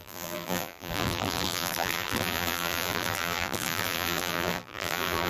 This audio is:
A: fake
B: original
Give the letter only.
A